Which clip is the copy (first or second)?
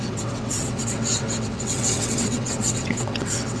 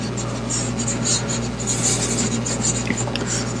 first